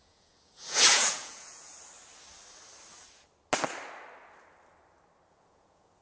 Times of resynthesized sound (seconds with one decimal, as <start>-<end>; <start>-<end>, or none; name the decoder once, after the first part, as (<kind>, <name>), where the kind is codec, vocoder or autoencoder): 0.0-1.7 (vocoder, Vocos); 5.3-6.0